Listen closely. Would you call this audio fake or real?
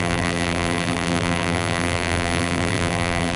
fake